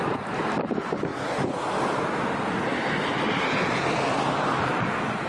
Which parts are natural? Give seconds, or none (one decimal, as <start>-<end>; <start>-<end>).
0.0-5.3